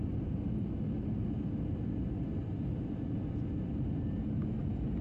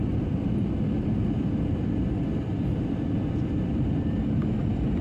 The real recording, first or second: first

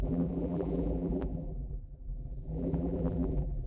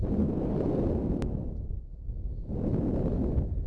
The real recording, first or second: second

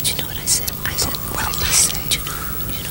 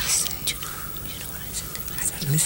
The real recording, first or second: first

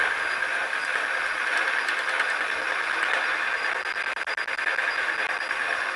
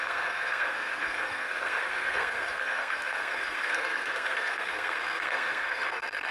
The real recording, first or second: first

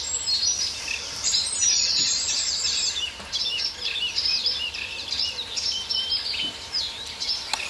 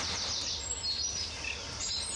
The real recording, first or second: second